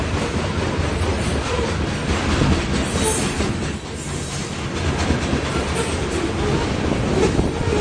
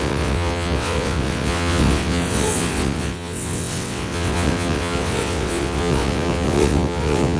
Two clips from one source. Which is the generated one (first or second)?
second